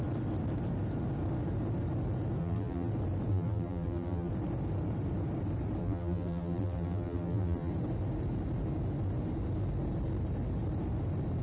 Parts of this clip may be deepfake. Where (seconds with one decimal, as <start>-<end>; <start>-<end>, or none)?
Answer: 2.4-2.9; 3.3-4.3; 5.8-7.7